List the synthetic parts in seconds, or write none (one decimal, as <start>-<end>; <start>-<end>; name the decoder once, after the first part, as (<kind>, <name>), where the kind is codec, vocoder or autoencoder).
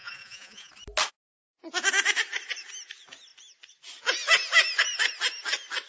0.0-0.7 (vocoder, Vocos)